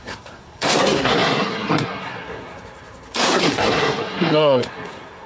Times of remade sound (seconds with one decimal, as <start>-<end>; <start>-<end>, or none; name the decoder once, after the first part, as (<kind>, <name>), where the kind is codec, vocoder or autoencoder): 0.0-5.3 (codec, SNAC)